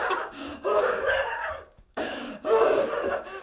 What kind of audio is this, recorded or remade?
remade